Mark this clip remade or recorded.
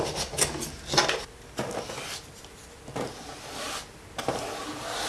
recorded